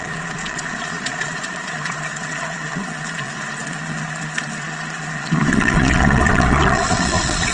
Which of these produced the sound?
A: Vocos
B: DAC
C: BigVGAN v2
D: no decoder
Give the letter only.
A